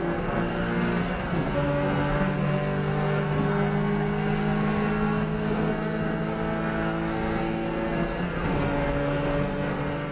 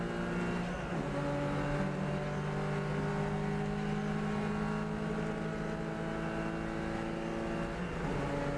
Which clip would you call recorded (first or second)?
second